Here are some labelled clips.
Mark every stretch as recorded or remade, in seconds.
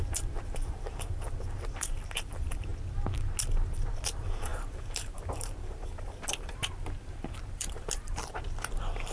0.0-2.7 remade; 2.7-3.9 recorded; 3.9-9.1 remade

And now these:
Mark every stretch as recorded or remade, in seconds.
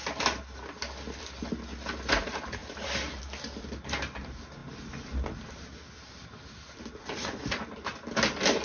0.0-2.6 recorded; 2.6-3.2 remade; 3.2-8.6 recorded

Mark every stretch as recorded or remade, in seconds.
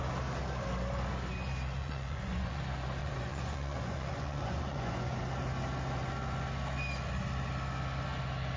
0.0-1.8 recorded; 1.8-2.6 remade; 2.6-3.0 recorded; 3.0-5.2 remade; 5.2-8.6 recorded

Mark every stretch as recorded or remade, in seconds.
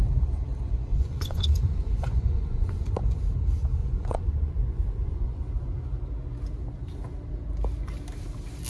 0.0-0.9 recorded; 0.9-3.2 remade; 3.2-3.8 recorded; 3.8-5.5 remade; 5.5-8.7 recorded